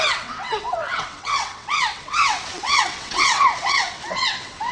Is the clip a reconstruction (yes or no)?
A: yes